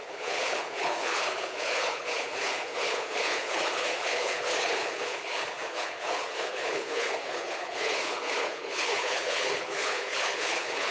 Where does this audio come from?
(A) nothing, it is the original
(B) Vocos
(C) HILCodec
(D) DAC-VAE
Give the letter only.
C